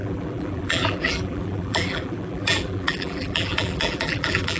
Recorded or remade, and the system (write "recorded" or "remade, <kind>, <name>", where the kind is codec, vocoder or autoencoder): remade, vocoder, BigVGAN v2